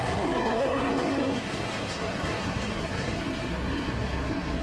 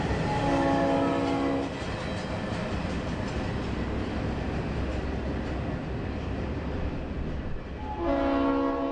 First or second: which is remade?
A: first